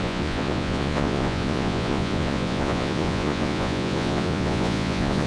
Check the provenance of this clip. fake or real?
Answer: fake